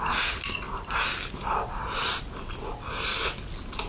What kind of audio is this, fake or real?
real